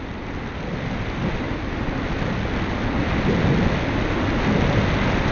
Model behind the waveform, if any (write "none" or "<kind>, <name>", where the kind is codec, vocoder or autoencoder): none